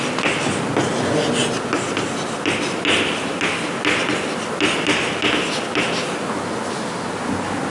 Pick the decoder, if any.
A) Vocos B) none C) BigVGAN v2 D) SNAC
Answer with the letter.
B